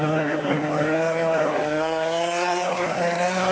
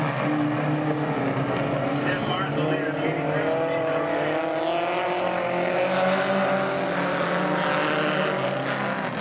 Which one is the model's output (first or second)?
first